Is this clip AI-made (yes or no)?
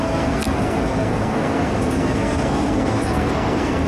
yes